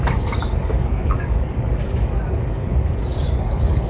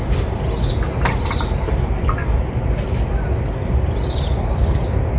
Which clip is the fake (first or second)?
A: first